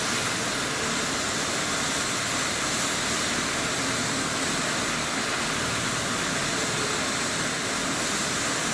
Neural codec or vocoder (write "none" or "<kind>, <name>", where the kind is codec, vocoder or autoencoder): none